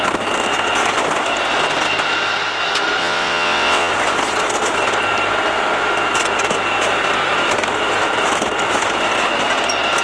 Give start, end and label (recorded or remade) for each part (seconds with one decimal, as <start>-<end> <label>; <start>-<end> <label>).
0.0-3.0 recorded; 3.0-3.9 remade; 3.9-10.0 recorded